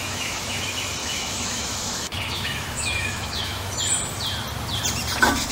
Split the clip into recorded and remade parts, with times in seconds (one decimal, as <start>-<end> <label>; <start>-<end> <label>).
0.0-0.6 remade; 0.6-1.0 recorded; 1.0-3.8 remade; 3.8-5.5 recorded